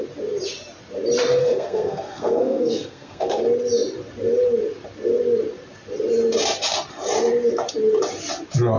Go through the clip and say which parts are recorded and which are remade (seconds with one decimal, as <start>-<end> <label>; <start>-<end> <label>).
0.0-1.4 recorded; 1.4-3.4 remade; 3.4-8.8 recorded